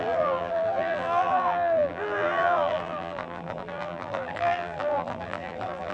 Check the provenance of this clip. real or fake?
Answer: fake